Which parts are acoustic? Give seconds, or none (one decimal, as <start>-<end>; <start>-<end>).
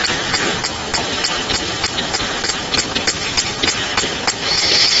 2.5-5.0